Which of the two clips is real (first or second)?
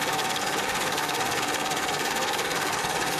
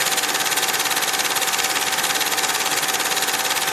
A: second